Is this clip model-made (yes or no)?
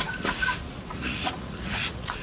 yes